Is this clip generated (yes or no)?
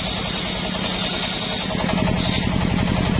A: no